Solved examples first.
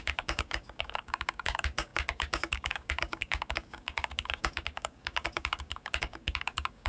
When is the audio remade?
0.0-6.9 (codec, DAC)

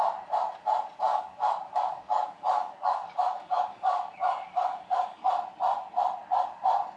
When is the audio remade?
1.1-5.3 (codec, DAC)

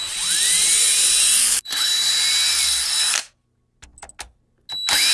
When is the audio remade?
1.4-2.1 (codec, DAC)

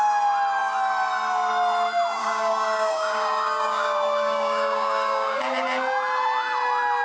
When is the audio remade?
2.2-5.4 (codec, DAC)

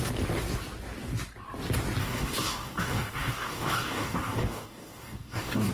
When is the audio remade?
2.0-5.7 (codec, DAC)

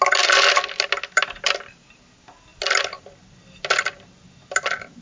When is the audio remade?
none